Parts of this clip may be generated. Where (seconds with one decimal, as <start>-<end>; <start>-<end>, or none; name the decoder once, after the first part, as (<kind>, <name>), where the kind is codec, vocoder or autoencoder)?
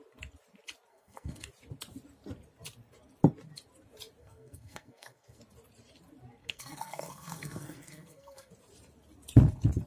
0.9-1.5 (codec, SNAC); 4.2-5.4; 6.4-8.5